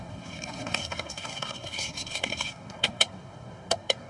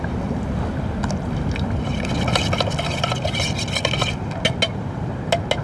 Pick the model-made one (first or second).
first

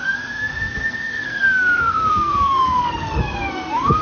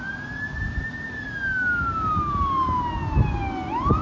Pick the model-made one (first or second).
first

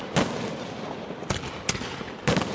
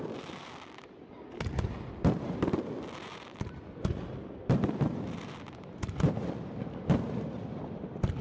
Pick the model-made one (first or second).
second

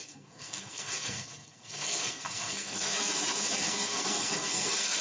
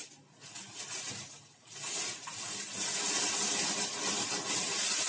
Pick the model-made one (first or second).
first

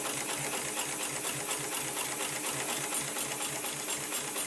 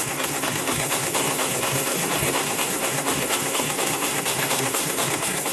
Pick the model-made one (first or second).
second